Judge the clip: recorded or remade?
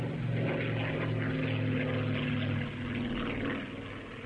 recorded